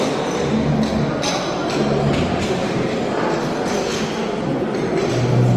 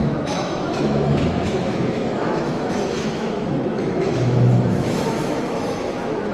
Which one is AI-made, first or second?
second